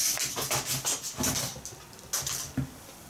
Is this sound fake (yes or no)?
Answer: no